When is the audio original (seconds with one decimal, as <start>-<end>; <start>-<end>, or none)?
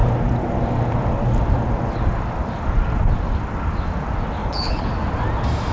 0.0-4.4; 4.9-5.7